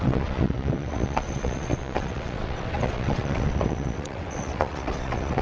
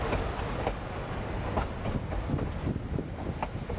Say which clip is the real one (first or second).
second